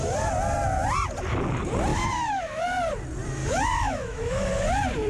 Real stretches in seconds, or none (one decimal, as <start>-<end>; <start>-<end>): 0.0-1.9; 2.6-3.4; 4.5-5.1